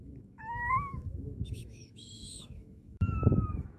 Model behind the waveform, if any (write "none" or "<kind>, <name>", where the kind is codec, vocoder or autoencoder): autoencoder, DAC-VAE